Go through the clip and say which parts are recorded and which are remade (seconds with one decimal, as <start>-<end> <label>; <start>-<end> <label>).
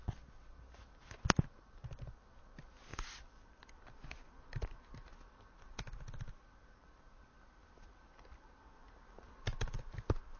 0.0-0.8 recorded; 0.8-2.0 remade; 2.0-2.9 recorded; 2.9-7.1 remade; 7.1-7.6 recorded; 7.6-10.4 remade